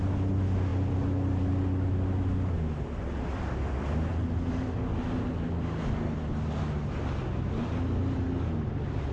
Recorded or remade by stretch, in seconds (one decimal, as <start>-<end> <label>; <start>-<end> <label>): 0.0-9.1 recorded